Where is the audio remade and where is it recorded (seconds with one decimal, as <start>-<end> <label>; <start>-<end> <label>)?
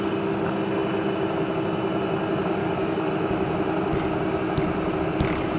0.0-2.6 recorded; 2.6-3.1 remade; 3.1-5.6 recorded